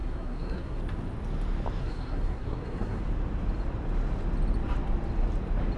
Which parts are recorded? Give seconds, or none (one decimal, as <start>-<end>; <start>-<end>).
0.8-1.8; 3.0-5.8